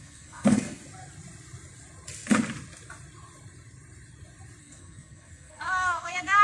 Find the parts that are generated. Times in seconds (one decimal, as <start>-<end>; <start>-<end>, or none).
0.0-0.8; 4.6-6.4

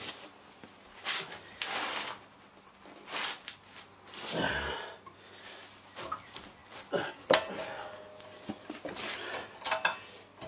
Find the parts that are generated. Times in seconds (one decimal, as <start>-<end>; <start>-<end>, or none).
none

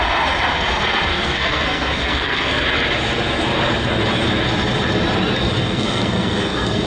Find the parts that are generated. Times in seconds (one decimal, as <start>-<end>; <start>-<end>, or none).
1.1-2.6; 5.6-6.9